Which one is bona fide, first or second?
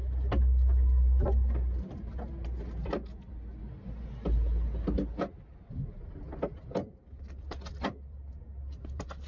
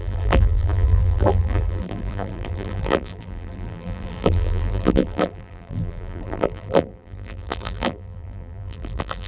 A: first